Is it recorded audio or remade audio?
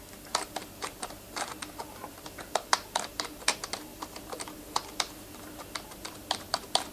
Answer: remade